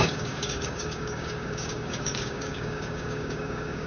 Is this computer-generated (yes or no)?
yes